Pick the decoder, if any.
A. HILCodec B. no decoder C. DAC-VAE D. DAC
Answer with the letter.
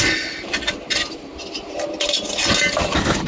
B